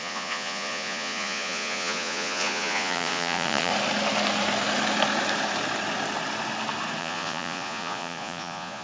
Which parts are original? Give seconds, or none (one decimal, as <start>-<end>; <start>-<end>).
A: 3.7-7.0